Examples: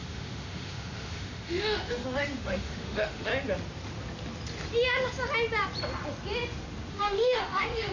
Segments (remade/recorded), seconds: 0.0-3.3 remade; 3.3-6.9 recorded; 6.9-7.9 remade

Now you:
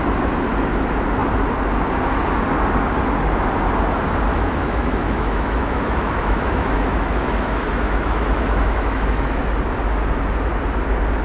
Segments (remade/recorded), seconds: 0.0-4.3 recorded; 4.3-9.4 remade; 9.4-11.2 recorded

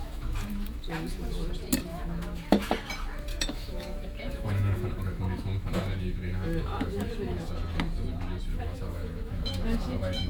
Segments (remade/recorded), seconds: 0.0-1.5 remade; 1.5-1.9 recorded; 1.9-2.7 remade; 2.7-3.3 recorded; 3.3-7.5 remade; 7.5-8.5 recorded; 8.5-10.3 remade

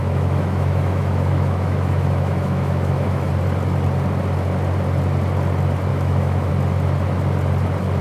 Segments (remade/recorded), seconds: 0.0-3.3 remade; 3.3-5.9 recorded; 5.9-6.5 remade; 6.5-8.0 recorded

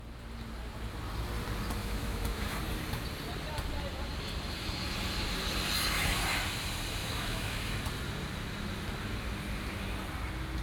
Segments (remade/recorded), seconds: 0.0-1.8 recorded; 1.8-2.6 remade; 2.6-7.0 recorded; 7.0-7.7 remade; 7.7-10.6 recorded